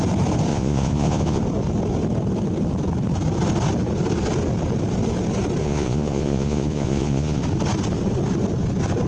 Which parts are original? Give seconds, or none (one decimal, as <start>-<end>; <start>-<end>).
0.0-0.5; 1.4-5.6; 7.4-9.1